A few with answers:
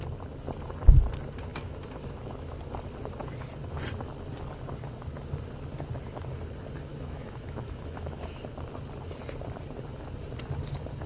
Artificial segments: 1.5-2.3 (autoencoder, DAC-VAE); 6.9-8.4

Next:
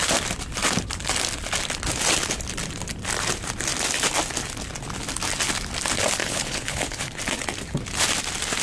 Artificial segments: 6.2-7.2 (codec, HILCodec)

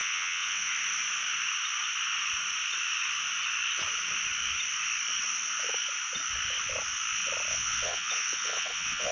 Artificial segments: 0.0-0.7 (vocoder, WaveNeXt); 7.5-9.1